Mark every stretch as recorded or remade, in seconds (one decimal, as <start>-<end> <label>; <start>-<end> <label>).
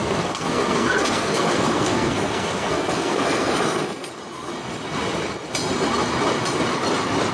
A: 0.0-4.2 remade; 4.2-7.3 recorded